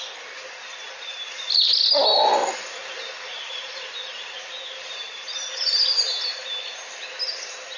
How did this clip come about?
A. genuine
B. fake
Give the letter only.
A